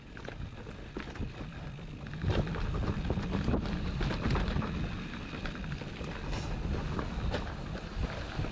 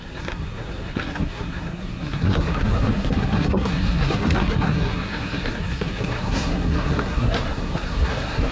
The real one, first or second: first